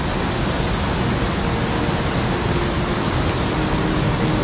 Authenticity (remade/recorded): recorded